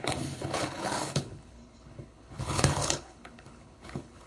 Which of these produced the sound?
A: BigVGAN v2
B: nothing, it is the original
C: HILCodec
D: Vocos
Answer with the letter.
C